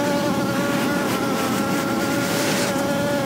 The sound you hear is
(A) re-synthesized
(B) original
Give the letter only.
B